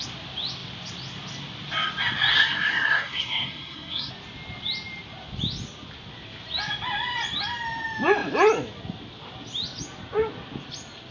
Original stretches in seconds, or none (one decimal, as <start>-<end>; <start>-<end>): 0.0-2.3; 4.1-11.1